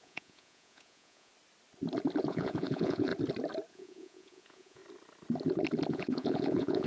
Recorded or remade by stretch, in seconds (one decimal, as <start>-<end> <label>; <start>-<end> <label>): 0.0-1.3 remade; 1.3-2.2 recorded; 2.2-3.1 remade; 3.1-3.7 recorded; 3.7-4.8 remade; 4.8-5.9 recorded; 5.9-6.9 remade